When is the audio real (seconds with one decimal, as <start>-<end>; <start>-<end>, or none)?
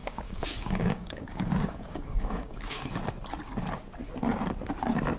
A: 2.9-5.2